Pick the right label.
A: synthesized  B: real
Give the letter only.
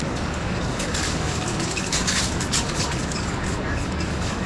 A